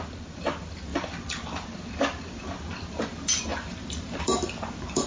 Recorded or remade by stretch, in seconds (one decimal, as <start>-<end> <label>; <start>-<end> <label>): 0.0-0.9 remade; 0.9-3.0 recorded; 3.0-5.1 remade